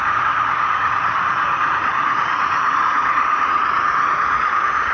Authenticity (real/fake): fake